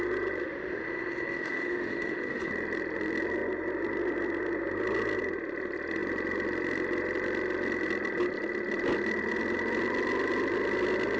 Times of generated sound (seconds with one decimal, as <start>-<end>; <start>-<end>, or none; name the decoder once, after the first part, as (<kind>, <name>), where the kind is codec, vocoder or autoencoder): 0.4-2.5 (autoencoder, DAC-VAE)